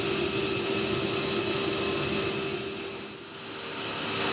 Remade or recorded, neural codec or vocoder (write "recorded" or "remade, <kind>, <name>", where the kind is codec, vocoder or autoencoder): recorded